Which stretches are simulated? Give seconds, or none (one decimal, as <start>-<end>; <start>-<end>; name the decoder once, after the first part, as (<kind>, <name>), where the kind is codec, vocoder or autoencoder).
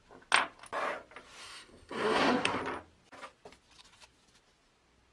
1.4-2.6 (codec, SNAC)